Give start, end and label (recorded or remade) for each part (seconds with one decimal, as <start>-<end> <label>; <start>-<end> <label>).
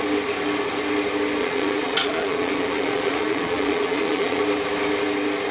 0.0-1.4 recorded; 1.4-4.4 remade; 4.4-5.5 recorded